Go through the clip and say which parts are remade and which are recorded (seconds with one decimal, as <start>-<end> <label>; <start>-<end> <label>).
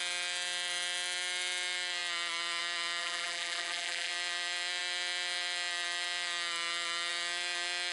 0.0-3.0 recorded; 3.0-4.1 remade; 4.1-7.9 recorded